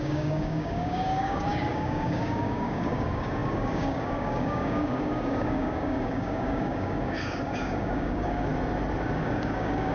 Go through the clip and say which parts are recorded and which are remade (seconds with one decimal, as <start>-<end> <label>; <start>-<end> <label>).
0.0-8.5 remade; 8.5-9.2 recorded; 9.2-9.9 remade